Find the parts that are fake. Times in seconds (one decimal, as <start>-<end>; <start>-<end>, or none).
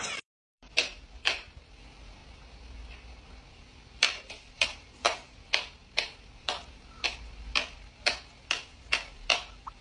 0.0-2.2; 3.5-9.8